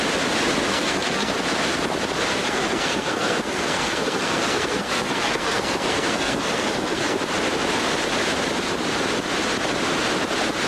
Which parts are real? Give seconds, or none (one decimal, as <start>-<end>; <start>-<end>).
0.0-0.7; 1.3-2.3; 7.2-10.7